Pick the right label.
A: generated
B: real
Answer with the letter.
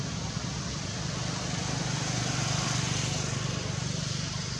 B